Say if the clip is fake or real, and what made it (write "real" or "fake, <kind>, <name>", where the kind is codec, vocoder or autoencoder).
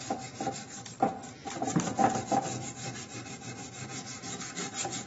real